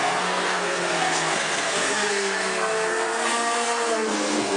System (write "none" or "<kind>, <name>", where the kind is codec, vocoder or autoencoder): codec, SNAC